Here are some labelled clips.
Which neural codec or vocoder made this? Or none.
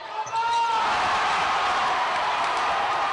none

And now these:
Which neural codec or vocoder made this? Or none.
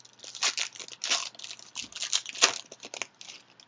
none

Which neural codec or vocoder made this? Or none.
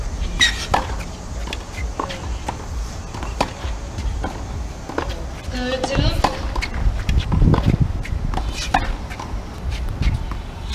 none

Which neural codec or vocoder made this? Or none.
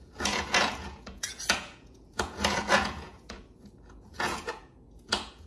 vocoder, Vocos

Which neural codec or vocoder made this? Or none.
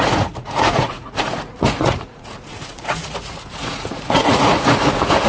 vocoder, Vocos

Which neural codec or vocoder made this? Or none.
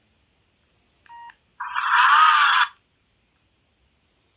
none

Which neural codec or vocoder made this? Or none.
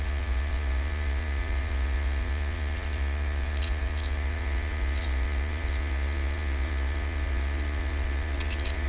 vocoder, Vocos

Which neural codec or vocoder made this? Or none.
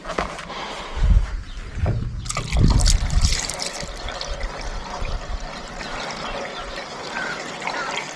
none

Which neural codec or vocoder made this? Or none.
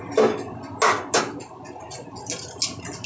none